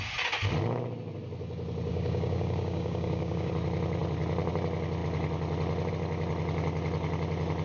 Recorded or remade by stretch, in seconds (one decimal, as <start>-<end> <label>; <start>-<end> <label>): 0.0-1.9 recorded; 1.9-3.5 remade; 3.5-7.6 recorded